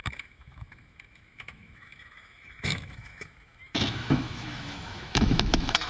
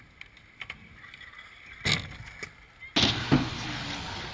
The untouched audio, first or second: second